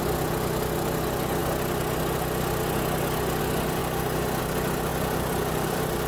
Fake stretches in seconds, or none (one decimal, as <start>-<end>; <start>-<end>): 3.8-4.4; 4.9-6.1